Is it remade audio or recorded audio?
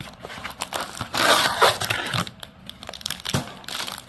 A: recorded